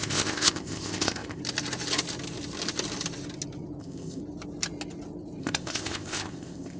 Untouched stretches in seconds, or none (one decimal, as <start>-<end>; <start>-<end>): 1.4-3.8; 4.2-5.4